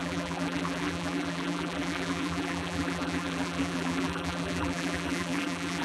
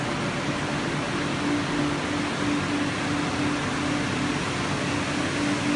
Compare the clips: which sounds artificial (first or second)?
first